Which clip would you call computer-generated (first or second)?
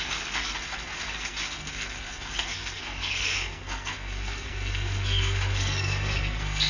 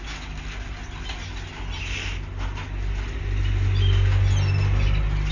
first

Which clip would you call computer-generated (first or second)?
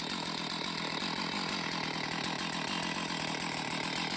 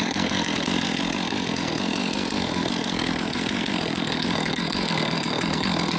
second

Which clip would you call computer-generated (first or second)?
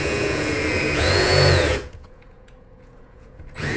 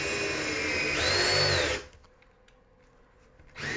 first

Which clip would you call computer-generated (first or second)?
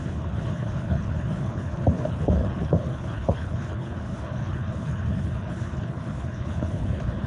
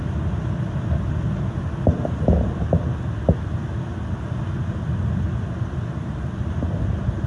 first